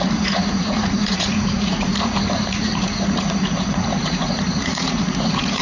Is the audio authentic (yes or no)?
no